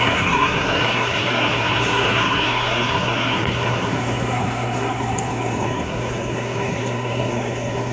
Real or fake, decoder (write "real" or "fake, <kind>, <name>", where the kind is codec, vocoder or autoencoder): fake, codec, SNAC